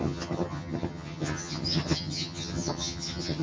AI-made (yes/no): yes